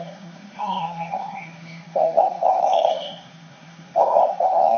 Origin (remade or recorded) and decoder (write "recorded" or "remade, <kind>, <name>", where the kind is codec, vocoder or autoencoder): remade, codec, SNAC